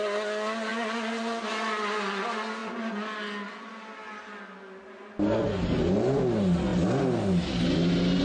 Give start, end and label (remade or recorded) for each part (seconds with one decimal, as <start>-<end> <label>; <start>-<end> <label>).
0.0-8.2 recorded